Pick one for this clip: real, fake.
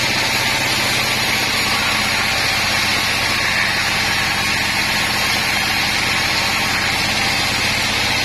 real